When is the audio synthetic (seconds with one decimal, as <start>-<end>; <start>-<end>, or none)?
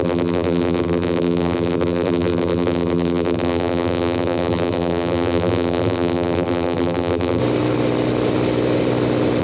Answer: 0.0-7.4